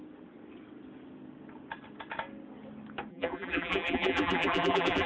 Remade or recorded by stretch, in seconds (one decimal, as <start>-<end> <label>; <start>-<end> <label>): 0.0-3.1 recorded; 3.1-5.1 remade